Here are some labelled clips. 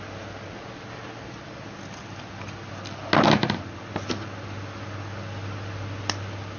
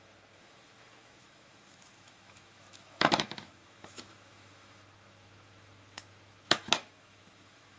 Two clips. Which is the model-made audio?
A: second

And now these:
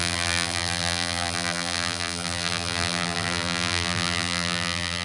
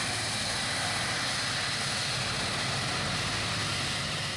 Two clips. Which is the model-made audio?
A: first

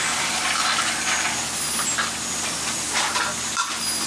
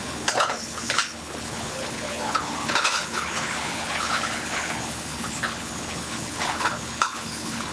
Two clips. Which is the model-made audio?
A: second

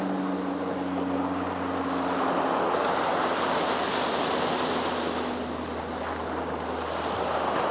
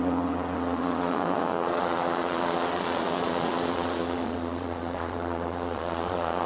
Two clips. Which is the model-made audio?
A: second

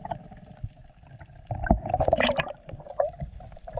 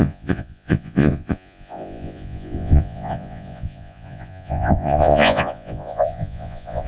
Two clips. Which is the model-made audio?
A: second